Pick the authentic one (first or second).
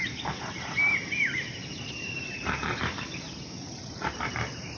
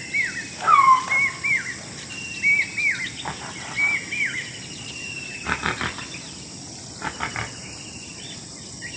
second